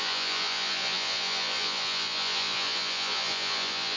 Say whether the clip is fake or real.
fake